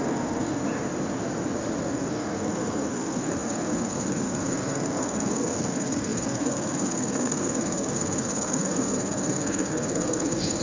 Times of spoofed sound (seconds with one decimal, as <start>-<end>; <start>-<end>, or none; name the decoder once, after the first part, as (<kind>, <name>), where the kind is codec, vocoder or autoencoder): 0.0-0.6 (codec, SNAC); 1.8-10.6